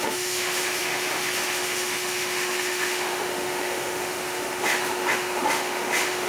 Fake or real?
fake